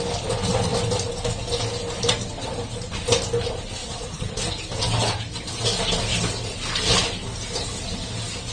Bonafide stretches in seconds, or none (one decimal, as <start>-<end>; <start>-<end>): 0.0-3.8; 4.4-8.5